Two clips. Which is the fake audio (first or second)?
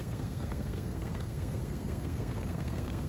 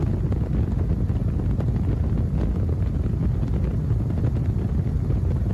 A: first